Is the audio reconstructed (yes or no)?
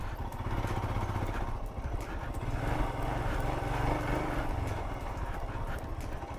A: no